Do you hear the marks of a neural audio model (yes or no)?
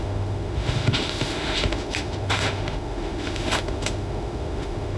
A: yes